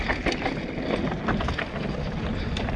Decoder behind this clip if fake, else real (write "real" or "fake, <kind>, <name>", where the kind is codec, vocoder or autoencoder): real